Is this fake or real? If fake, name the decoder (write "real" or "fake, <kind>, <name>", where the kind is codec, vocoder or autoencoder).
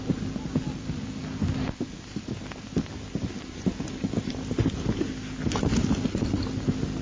real